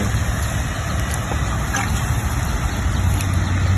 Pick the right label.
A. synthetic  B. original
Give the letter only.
B